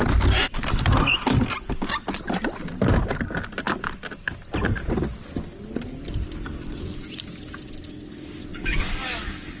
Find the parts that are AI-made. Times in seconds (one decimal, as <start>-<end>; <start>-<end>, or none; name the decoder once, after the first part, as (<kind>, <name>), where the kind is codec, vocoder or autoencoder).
8.5-9.6 (codec, DAC)